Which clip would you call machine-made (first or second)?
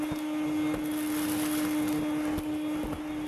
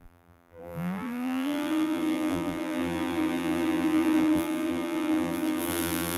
second